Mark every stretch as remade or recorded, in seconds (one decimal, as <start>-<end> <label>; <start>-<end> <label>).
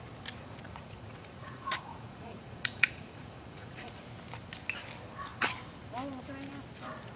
0.0-0.4 recorded; 0.4-4.0 remade; 4.0-7.2 recorded